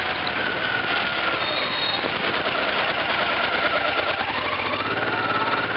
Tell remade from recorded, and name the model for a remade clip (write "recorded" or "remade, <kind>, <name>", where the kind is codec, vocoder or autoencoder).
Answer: recorded